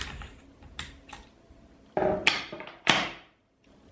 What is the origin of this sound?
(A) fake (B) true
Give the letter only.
A